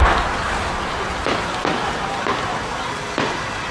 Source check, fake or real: real